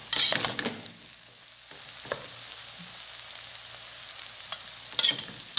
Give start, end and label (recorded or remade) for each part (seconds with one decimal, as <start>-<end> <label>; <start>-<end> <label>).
0.0-5.6 recorded